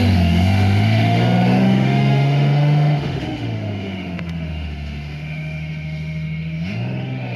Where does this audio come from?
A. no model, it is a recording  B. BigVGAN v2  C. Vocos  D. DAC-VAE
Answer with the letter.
D